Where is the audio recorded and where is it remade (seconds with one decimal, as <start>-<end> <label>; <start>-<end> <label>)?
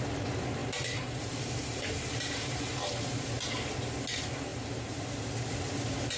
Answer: 0.0-0.6 recorded; 0.6-3.3 remade; 3.3-4.5 recorded; 4.5-5.0 remade; 5.0-6.2 recorded